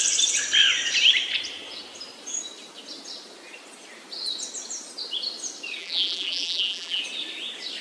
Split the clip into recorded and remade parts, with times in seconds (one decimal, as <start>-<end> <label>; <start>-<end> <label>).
0.0-5.8 recorded; 5.8-7.0 remade; 7.0-7.8 recorded